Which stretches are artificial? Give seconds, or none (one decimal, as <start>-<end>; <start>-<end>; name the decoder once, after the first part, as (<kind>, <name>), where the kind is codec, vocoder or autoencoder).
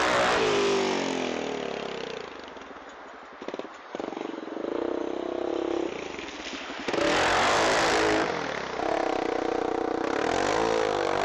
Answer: 3.7-4.6 (codec, DAC)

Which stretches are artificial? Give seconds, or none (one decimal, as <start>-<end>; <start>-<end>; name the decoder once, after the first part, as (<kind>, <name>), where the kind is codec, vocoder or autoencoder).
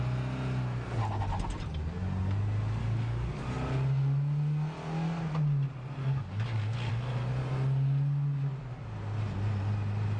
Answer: 2.8-3.5 (codec, DAC); 6.0-6.9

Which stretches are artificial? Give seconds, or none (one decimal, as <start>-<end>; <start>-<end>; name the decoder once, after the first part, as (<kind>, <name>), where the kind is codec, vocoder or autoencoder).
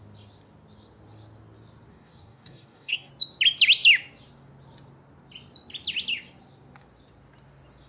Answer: 1.9-3.1 (codec, DAC)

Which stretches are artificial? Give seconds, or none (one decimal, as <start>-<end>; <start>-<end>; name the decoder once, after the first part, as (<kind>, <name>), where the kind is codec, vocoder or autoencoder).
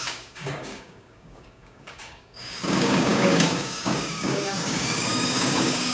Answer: 0.0-5.9 (codec, DAC)